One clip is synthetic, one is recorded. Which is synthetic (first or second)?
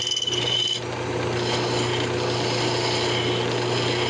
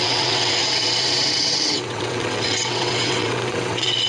second